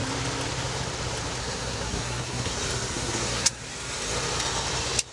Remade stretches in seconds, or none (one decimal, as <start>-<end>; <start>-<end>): 1.4-2.5; 2.9-3.6